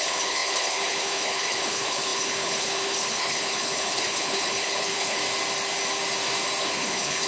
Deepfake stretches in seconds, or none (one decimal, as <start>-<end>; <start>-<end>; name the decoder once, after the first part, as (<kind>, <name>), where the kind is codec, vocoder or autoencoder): 0.0-5.2 (codec, HILCodec); 6.6-7.3